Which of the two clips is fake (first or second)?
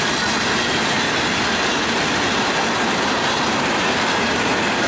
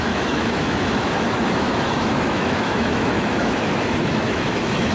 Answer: second